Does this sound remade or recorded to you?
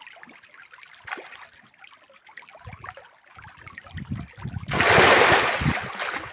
recorded